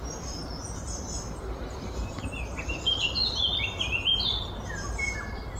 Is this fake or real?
real